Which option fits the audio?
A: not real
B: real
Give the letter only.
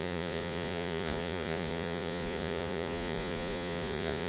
A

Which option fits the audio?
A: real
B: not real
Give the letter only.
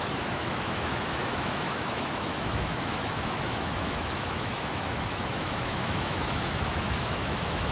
B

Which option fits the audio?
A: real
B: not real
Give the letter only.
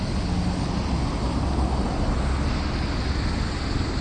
A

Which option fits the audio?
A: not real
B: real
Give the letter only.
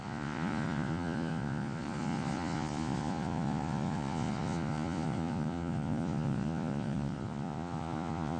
A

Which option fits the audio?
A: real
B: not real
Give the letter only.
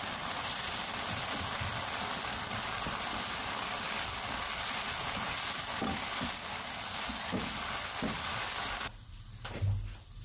A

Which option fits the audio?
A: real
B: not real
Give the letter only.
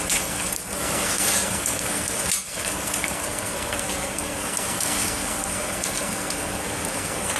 B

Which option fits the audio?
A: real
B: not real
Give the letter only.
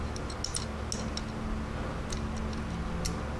A